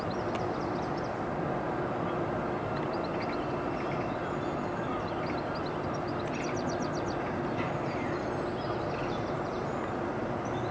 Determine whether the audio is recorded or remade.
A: recorded